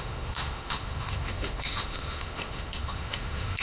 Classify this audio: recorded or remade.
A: remade